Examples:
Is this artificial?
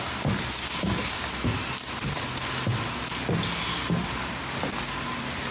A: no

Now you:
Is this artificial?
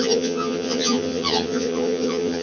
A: yes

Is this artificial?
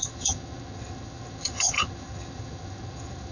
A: yes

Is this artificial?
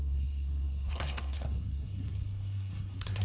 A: yes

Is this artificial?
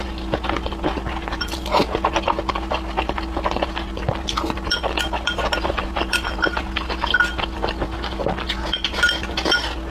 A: no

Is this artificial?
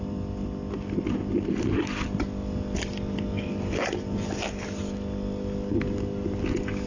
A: no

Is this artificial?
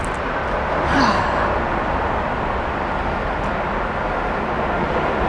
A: no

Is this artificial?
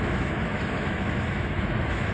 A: yes